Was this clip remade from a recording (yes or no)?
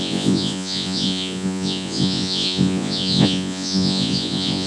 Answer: yes